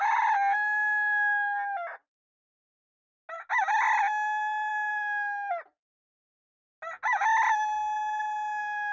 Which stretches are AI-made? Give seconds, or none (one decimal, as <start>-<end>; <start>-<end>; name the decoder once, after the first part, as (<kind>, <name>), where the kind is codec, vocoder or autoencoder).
none